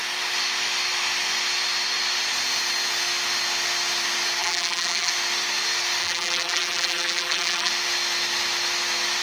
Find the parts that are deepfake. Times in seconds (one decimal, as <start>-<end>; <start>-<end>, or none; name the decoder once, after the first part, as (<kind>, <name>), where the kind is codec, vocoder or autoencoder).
4.4-5.1 (vocoder, BigVGAN v2); 6.0-7.7

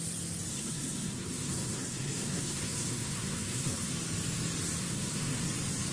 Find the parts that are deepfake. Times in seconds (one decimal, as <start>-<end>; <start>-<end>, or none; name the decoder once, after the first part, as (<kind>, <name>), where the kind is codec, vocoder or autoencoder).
0.5-3.9 (codec, SNAC); 4.8-5.5